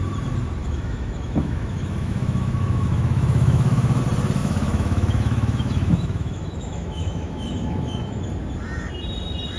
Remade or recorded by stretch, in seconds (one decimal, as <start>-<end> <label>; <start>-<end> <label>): 0.0-0.6 recorded; 0.6-4.0 remade; 4.0-4.4 recorded; 4.4-8.2 remade; 8.2-9.6 recorded